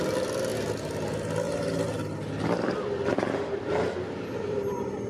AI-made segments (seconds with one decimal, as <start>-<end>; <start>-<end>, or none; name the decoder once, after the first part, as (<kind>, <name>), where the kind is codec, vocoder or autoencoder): none